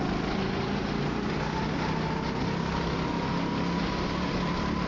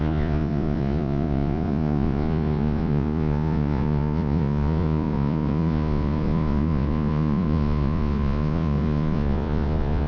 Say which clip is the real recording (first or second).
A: first